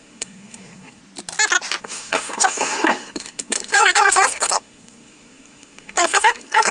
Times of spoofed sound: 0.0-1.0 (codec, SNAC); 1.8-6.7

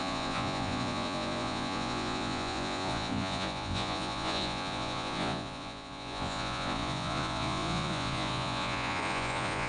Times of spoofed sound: 0.0-9.7 (vocoder, Vocos)

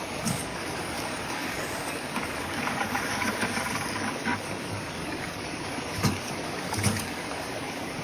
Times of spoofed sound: 0.0-8.0 (codec, DAC)